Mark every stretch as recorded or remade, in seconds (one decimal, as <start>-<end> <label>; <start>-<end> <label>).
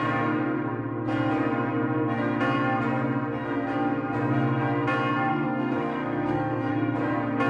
0.0-5.3 recorded; 5.3-6.7 remade; 6.7-7.5 recorded